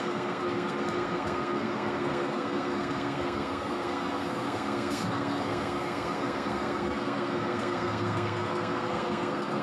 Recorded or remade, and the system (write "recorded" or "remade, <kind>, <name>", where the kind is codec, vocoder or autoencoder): remade, codec, SNAC